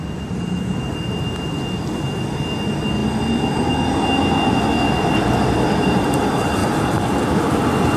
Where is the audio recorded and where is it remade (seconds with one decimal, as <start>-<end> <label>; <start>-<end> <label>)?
0.0-6.6 recorded; 6.6-8.0 remade